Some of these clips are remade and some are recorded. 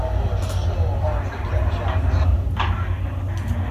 recorded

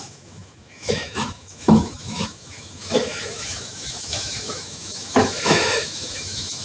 remade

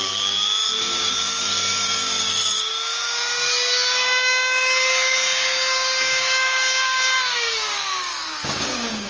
remade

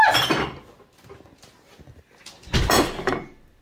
recorded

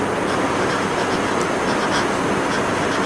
recorded